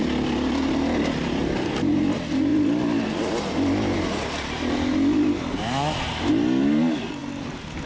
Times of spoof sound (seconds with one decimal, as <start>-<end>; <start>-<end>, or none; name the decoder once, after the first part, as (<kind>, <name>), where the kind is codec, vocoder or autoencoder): none